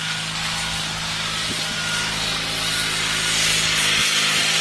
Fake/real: real